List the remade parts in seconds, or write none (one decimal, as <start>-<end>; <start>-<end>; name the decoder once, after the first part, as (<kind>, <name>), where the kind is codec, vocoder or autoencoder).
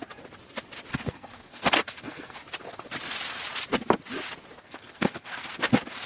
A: 0.9-2.4 (codec, SNAC); 4.6-5.5